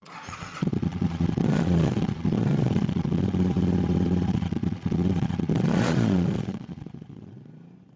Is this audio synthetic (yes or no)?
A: yes